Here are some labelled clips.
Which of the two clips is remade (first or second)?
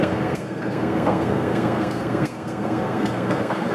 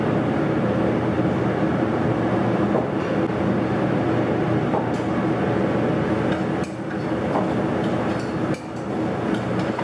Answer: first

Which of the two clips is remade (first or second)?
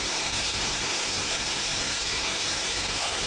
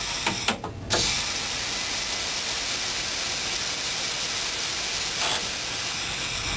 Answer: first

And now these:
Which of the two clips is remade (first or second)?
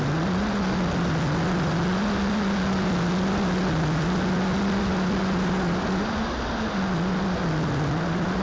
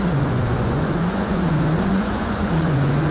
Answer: second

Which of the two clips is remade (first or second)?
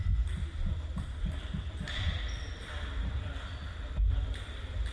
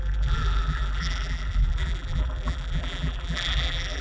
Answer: second